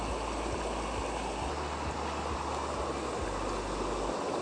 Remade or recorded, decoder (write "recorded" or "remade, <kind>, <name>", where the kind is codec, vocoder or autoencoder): recorded